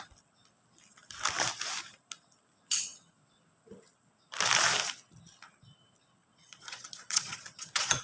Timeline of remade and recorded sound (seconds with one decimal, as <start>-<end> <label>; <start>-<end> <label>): 0.0-6.2 recorded; 6.2-8.0 remade